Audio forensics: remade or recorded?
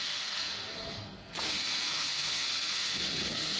remade